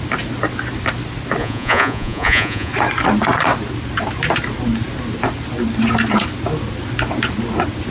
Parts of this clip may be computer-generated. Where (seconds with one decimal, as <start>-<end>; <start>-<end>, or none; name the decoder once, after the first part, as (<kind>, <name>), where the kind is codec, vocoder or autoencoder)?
1.4-2.7 (vocoder, Vocos)